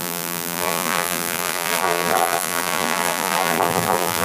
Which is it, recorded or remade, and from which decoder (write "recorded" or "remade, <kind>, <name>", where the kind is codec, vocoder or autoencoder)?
remade, vocoder, BigVGAN v2